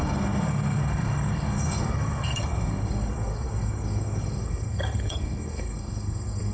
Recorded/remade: remade